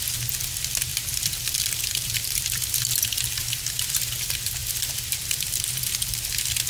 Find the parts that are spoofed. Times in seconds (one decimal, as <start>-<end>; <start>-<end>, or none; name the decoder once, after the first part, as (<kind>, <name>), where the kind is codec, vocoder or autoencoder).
0.9-3.8 (vocoder, BigVGAN v2); 4.6-5.8